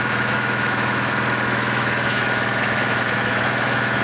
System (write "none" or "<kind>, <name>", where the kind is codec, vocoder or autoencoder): autoencoder, DAC-VAE